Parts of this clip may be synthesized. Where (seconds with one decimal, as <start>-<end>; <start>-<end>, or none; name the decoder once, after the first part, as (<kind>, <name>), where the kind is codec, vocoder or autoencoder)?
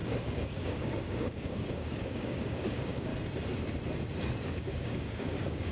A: 0.0-3.1 (codec, DAC); 4.5-5.7